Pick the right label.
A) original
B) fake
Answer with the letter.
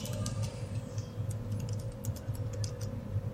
A